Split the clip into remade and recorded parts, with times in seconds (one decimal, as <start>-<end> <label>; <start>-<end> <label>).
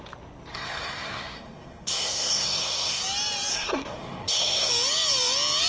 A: 0.0-0.5 recorded; 0.5-3.0 remade; 3.0-3.5 recorded; 3.5-4.7 remade; 4.7-5.7 recorded